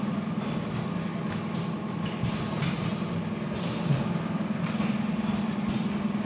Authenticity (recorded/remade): recorded